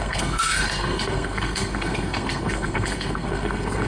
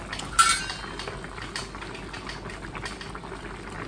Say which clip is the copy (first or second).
first